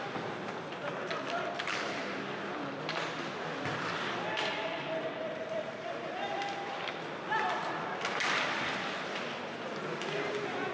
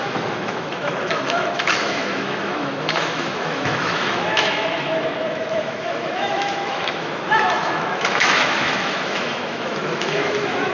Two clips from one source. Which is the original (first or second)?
first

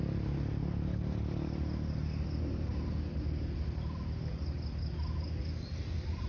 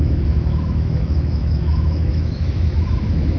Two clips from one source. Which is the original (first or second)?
first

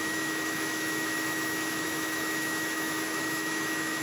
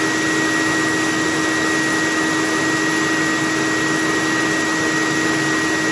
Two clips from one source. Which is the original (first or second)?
second